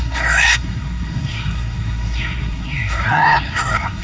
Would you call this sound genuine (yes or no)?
no